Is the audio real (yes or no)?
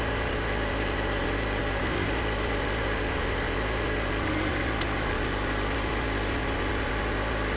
yes